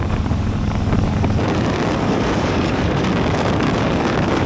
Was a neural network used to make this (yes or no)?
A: yes